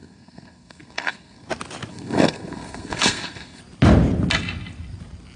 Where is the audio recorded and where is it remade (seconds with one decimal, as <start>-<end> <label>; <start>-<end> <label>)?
0.0-1.5 remade; 1.5-1.9 recorded; 1.9-3.6 remade; 3.6-5.4 recorded

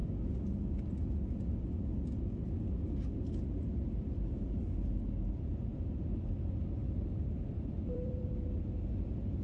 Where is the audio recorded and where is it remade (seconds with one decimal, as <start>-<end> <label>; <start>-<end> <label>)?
0.0-5.7 recorded; 5.7-6.3 remade; 6.3-6.8 recorded; 6.8-8.7 remade; 8.7-9.4 recorded